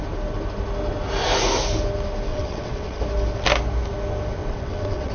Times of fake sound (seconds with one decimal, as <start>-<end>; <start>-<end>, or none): 2.3-3.0; 4.4-5.1